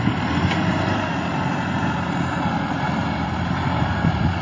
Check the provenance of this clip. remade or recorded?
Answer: remade